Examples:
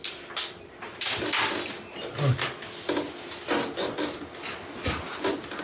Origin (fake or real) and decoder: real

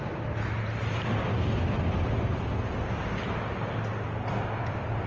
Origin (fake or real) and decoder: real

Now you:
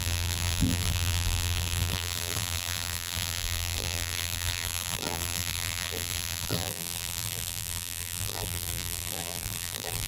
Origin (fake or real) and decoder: fake, vocoder, BigVGAN v2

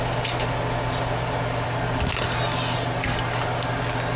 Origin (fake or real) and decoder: real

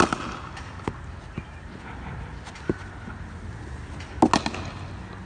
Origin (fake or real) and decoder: real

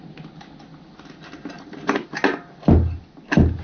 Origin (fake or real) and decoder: real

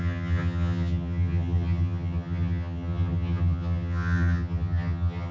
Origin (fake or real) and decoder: fake, vocoder, HiFi-GAN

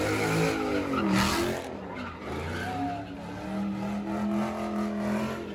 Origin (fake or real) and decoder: real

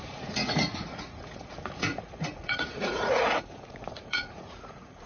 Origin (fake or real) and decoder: fake, vocoder, Vocos